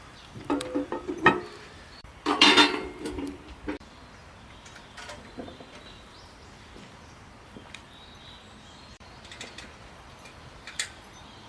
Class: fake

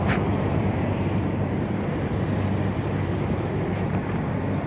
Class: fake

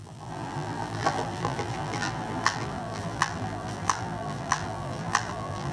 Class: fake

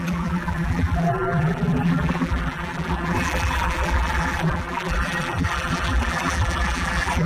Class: fake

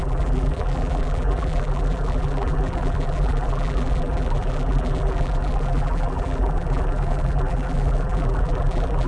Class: fake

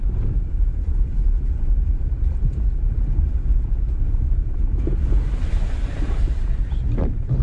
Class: fake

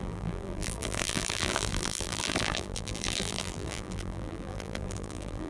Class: fake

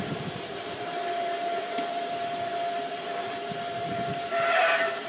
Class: fake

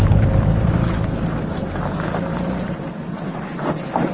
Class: fake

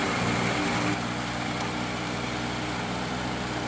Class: fake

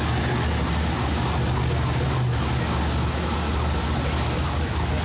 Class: real